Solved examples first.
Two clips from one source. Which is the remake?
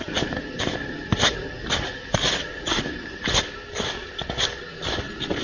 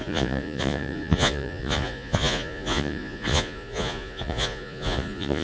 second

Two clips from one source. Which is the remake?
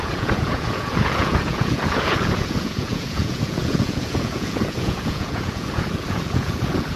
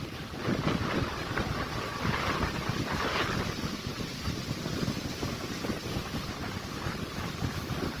first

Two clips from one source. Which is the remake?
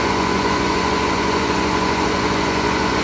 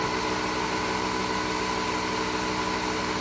first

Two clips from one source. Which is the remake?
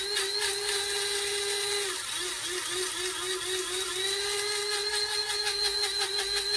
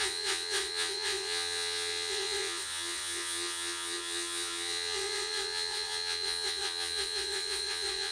second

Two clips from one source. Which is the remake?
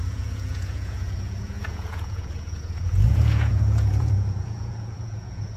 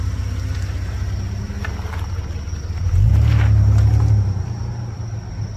first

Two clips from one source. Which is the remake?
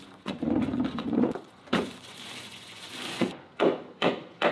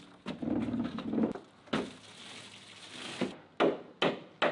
first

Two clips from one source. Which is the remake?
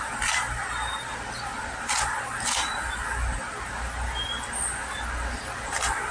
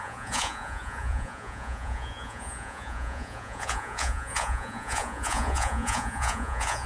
second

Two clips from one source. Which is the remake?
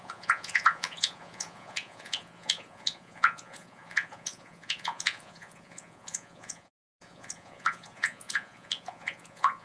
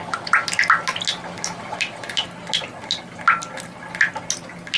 first